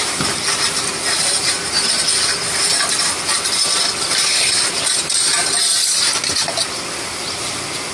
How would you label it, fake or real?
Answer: real